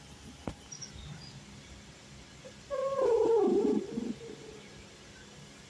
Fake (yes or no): yes